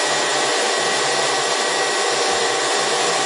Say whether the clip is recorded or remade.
recorded